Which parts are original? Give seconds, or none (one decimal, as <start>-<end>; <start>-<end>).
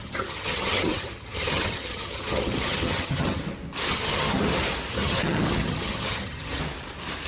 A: 3.4-3.9; 4.4-4.9; 6.6-7.3